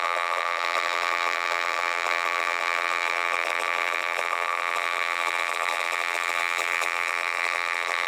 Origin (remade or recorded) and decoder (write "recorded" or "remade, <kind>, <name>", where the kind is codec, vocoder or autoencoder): remade, vocoder, BigVGAN v2